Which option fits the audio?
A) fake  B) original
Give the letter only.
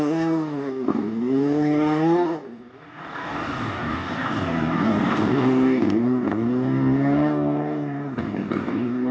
A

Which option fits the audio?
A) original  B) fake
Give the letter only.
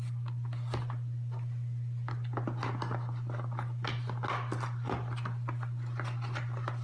A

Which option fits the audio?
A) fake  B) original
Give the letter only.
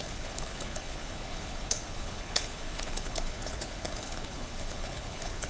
A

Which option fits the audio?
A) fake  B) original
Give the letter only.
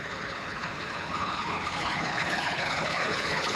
A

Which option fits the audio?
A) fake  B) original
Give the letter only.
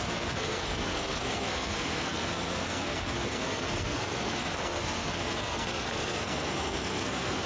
A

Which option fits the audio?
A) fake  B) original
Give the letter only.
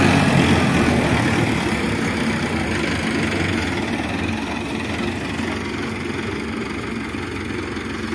B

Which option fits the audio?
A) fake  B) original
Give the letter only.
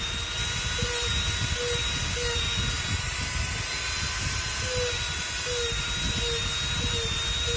B